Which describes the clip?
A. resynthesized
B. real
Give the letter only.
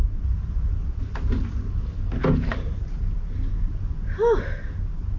B